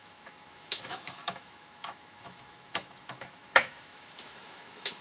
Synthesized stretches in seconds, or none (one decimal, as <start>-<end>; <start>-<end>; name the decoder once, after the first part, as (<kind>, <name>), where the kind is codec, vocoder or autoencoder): 0.0-5.0 (autoencoder, DAC-VAE)